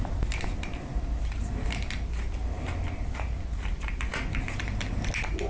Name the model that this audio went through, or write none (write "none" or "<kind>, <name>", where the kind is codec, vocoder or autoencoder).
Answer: none